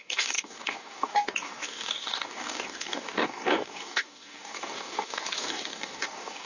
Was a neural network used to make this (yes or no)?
yes